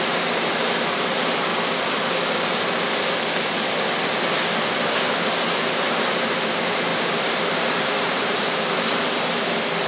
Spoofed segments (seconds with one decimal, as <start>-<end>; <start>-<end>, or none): 0.0-1.5; 5.7-6.9; 7.5-9.9